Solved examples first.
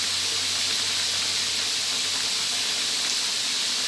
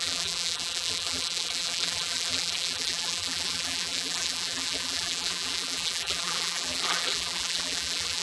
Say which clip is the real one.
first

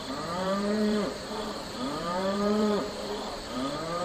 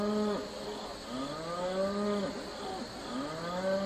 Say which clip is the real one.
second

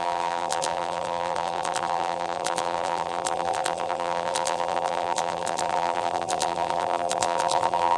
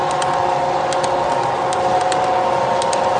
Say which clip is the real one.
second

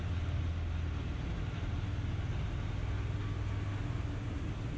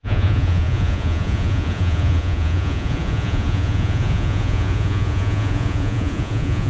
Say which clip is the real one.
first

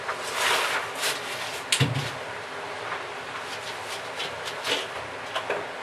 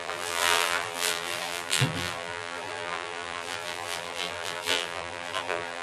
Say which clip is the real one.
first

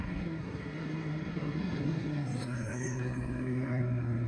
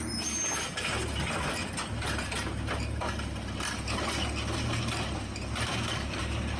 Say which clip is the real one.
second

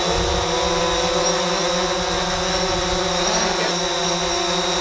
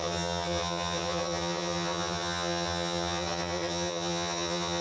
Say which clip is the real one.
first